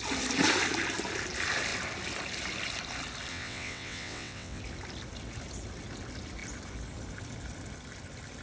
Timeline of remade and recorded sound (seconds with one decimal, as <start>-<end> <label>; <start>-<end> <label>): 0.0-3.3 recorded; 3.3-4.6 remade; 4.6-8.4 recorded